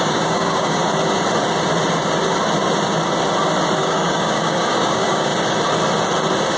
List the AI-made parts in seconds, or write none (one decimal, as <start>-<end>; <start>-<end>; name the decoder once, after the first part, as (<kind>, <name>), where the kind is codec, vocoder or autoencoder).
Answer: 0.0-0.8 (codec, DAC); 3.8-5.3